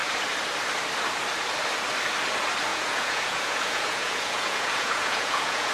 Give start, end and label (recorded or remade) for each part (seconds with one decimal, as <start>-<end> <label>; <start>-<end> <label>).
0.0-2.7 recorded; 2.7-5.7 remade